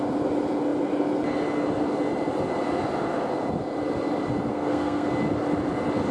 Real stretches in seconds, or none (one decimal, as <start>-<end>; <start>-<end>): 0.0-4.5; 5.1-6.1